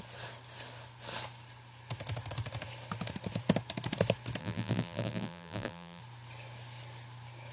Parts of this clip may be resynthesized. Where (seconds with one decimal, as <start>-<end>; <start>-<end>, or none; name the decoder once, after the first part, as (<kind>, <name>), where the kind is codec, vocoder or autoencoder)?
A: 4.4-6.0 (vocoder, BigVGAN v2)